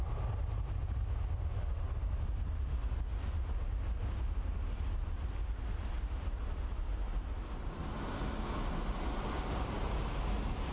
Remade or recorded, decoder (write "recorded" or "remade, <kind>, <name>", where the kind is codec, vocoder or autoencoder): recorded